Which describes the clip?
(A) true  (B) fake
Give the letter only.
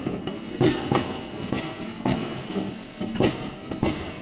B